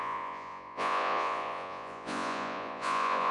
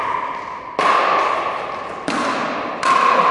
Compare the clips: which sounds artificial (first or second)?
first